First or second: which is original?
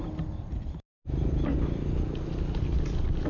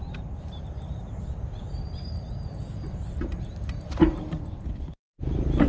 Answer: first